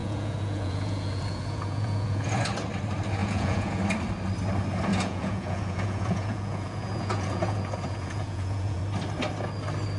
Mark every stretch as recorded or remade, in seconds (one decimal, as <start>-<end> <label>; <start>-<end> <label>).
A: 0.0-2.3 remade; 2.3-3.2 recorded; 3.2-3.8 remade; 3.8-4.9 recorded; 4.9-8.8 remade; 8.8-10.0 recorded